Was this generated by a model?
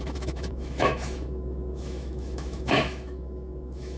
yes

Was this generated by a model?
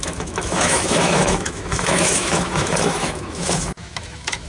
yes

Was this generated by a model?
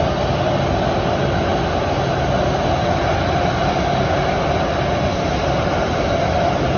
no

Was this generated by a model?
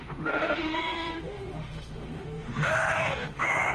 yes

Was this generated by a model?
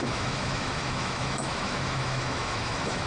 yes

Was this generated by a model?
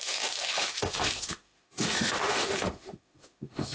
yes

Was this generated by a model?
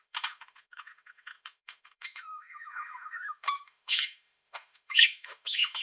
yes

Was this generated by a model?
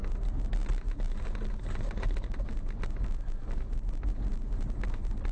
no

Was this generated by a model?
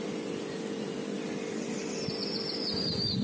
no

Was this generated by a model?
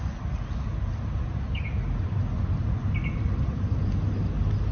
no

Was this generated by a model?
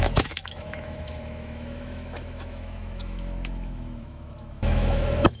yes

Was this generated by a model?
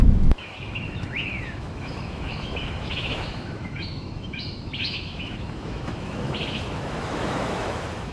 yes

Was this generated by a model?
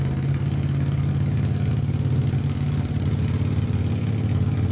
no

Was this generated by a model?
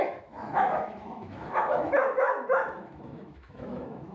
yes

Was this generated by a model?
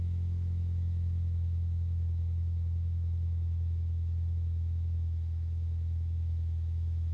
yes